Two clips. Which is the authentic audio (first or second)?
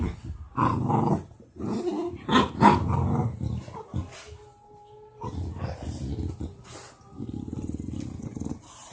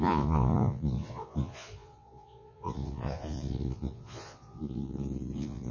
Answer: first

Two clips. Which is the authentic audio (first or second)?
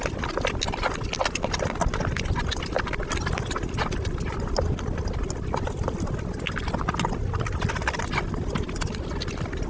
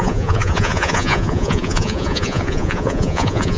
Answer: first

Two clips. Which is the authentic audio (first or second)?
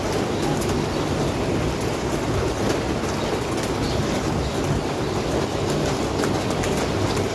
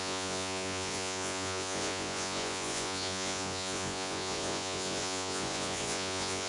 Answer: first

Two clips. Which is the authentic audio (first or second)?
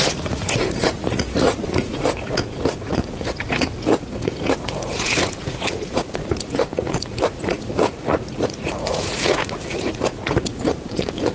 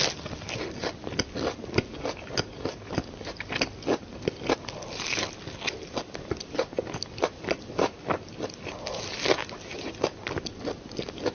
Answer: second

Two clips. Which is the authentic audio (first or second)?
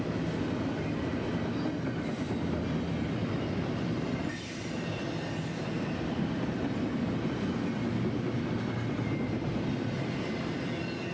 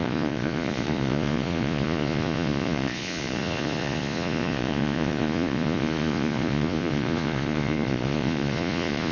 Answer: first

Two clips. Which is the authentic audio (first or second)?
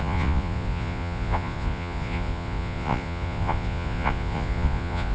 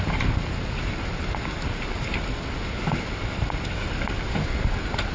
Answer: second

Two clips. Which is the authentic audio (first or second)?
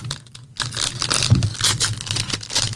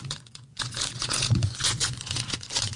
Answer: first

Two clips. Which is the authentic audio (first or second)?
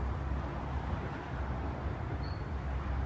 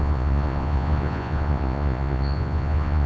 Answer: first